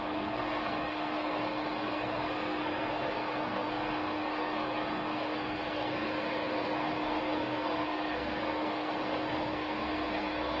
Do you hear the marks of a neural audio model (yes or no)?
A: yes